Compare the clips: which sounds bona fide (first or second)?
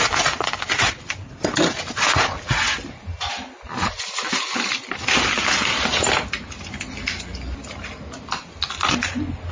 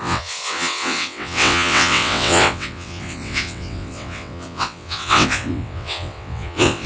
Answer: first